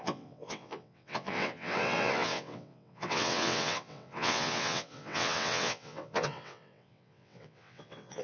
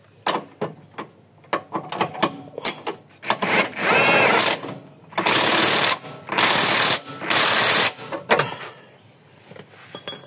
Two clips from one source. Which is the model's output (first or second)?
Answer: first